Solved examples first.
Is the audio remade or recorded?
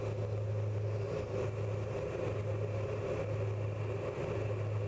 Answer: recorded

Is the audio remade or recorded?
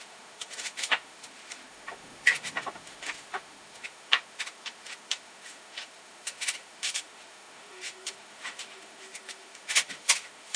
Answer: remade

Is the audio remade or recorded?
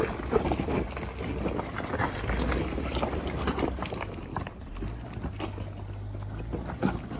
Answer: recorded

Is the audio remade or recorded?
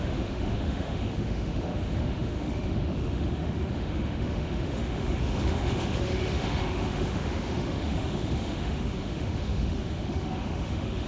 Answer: remade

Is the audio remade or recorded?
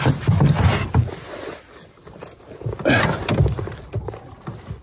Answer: recorded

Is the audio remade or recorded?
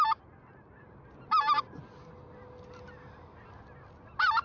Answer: recorded